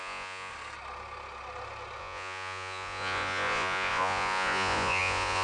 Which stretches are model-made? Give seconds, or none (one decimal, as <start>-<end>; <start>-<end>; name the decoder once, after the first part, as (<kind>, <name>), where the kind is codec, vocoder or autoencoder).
0.0-0.5 (vocoder, Vocos); 2.0-5.4